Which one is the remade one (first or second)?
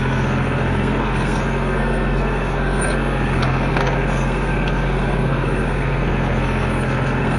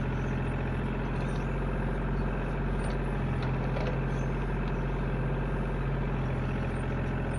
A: first